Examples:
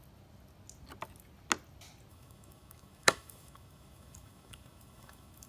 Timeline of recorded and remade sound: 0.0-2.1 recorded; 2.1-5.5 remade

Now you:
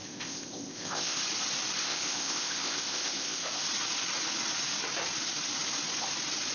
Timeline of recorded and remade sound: 0.0-1.2 remade; 1.2-1.8 recorded; 1.8-3.6 remade; 3.6-6.5 recorded

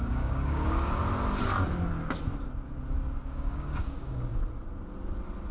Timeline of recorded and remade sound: 0.0-1.0 remade; 1.0-3.2 recorded; 3.2-4.3 remade; 4.3-5.5 recorded

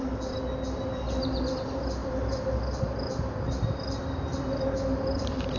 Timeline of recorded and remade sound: 0.0-5.6 recorded

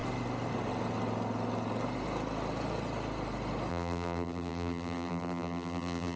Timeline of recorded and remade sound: 0.0-3.7 recorded; 3.7-6.2 remade

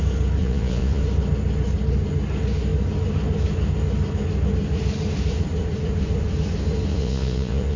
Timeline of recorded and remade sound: 0.0-0.4 recorded; 0.4-1.0 remade; 1.0-6.9 recorded; 6.9-7.8 remade

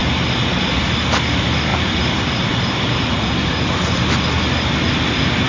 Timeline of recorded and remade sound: 0.0-1.7 recorded; 1.7-3.3 remade; 3.3-5.5 recorded

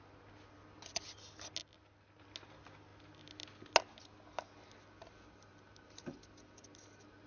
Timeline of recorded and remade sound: 0.0-7.3 recorded